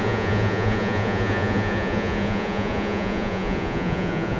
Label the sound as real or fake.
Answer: fake